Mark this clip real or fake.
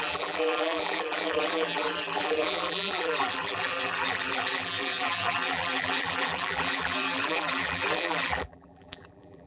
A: fake